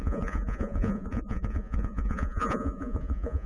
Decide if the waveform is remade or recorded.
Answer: remade